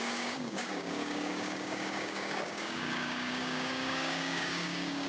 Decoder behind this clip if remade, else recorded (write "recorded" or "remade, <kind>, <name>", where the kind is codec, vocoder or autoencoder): remade, codec, DAC